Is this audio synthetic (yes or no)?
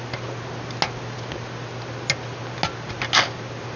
no